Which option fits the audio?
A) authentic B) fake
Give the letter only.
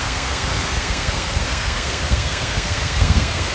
B